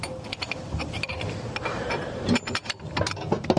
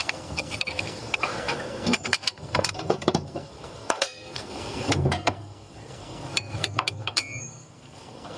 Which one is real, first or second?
first